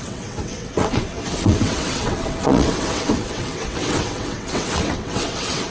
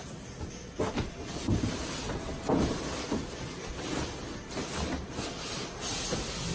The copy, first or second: first